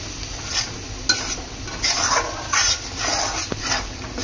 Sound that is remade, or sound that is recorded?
recorded